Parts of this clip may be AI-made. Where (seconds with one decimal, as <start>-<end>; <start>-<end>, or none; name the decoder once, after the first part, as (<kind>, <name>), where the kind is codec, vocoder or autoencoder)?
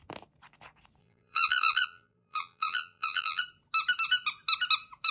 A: 1.0-3.4 (vocoder, BigVGAN v2)